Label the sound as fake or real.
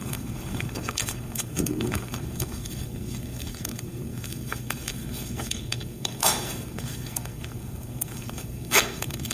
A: fake